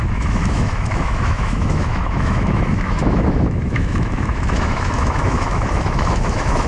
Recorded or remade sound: remade